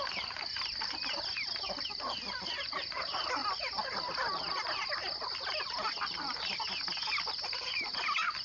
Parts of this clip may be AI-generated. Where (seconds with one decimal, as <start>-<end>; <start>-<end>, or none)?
none